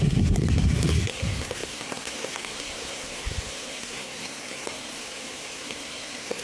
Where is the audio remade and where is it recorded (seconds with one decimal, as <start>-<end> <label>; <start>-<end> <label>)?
0.0-6.4 remade